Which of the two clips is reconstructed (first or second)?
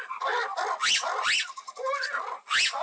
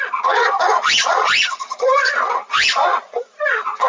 second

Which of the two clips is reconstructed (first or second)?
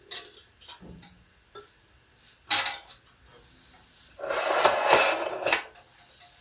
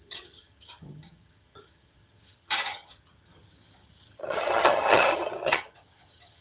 second